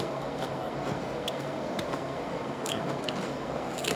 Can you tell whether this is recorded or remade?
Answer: remade